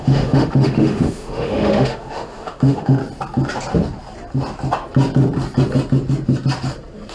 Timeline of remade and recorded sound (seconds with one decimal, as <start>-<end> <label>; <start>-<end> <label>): 0.0-3.0 remade; 3.0-7.1 recorded